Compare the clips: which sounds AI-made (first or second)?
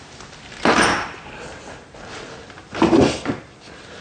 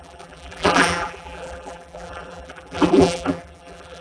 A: second